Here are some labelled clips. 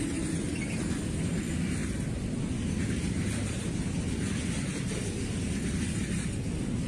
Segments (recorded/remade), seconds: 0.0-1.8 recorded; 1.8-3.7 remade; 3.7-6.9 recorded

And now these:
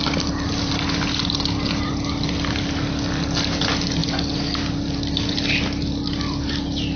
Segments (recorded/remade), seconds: 0.0-7.0 recorded

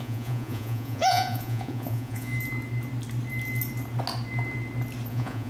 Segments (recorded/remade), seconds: 0.0-2.3 remade; 2.3-5.1 recorded; 5.1-5.5 remade

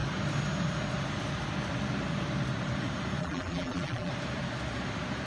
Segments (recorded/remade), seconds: 0.0-3.2 recorded; 3.2-4.1 remade; 4.1-5.3 recorded

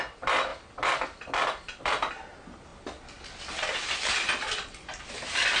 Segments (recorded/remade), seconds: 0.0-0.5 recorded; 0.5-2.1 remade; 2.1-5.6 recorded

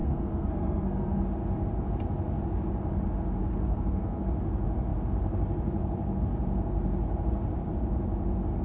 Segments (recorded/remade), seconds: 0.0-1.2 remade; 1.2-3.4 recorded; 3.4-4.2 remade; 4.2-8.6 recorded

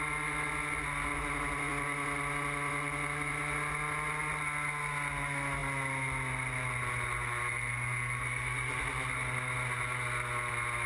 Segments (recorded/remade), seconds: 0.0-10.9 recorded